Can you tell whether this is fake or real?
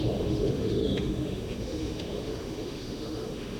fake